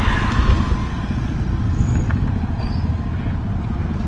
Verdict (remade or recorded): recorded